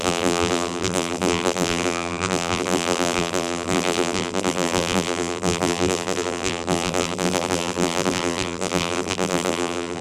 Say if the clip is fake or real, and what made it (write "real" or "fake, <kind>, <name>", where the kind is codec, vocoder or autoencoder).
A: fake, vocoder, BigVGAN v2